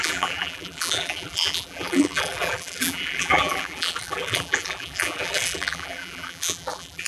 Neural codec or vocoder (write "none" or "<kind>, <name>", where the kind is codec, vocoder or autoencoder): vocoder, BigVGAN v2